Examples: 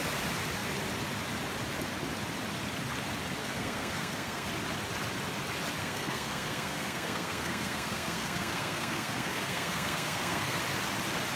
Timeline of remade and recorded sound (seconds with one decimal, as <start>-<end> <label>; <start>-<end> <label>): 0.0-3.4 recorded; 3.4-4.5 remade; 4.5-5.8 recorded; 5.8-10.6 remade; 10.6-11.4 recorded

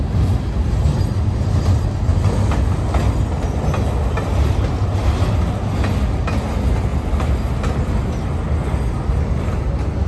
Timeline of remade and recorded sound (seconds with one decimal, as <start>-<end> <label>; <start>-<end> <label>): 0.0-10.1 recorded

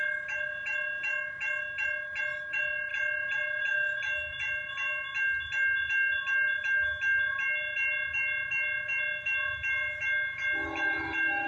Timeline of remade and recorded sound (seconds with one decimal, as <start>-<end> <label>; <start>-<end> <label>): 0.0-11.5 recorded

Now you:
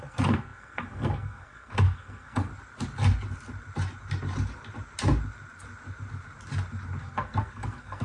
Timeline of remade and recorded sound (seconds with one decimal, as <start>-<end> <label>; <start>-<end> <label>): 0.0-2.5 remade; 2.5-7.0 recorded; 7.0-8.0 remade

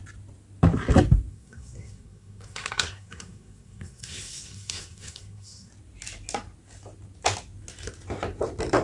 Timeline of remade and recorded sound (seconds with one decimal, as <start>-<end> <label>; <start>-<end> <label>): 0.0-1.3 recorded; 1.3-5.7 remade; 5.7-8.8 recorded

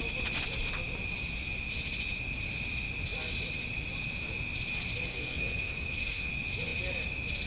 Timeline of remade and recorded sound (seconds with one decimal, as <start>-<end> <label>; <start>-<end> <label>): 0.0-5.1 recorded; 5.1-6.3 remade; 6.3-7.5 recorded

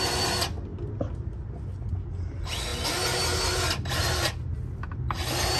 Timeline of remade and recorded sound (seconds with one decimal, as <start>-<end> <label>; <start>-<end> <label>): 0.0-5.6 recorded

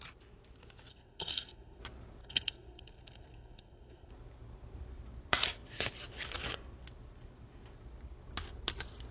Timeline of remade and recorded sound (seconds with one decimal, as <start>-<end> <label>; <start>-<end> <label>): 0.0-0.9 recorded; 0.9-1.8 remade; 1.8-2.2 recorded; 2.2-4.1 remade; 4.1-9.1 recorded